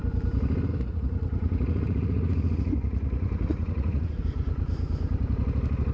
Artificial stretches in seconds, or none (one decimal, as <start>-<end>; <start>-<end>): 0.7-4.2